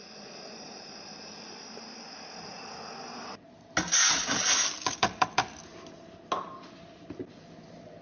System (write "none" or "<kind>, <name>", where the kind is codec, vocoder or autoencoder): none